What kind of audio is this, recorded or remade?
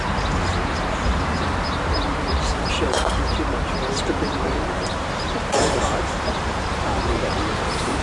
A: remade